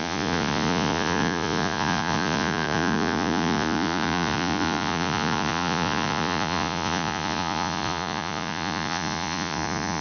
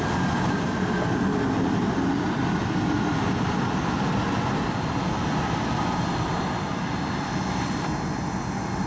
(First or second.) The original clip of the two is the second